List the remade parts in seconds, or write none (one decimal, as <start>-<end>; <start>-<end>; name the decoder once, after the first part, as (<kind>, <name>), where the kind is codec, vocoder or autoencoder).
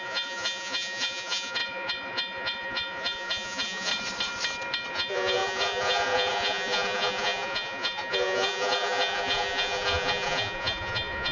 0.0-3.9 (vocoder, Vocos); 4.9-11.3